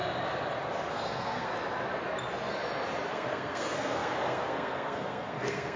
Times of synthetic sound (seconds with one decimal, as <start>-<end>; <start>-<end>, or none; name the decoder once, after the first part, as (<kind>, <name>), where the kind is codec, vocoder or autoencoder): 0.9-1.5 (codec, SNAC); 3.1-5.8